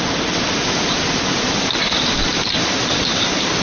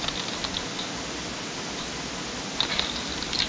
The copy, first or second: first